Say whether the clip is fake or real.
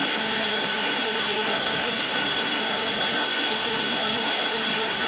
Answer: fake